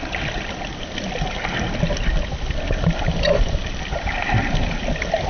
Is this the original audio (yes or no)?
yes